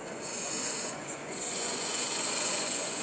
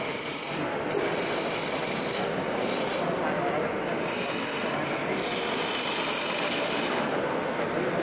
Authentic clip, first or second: second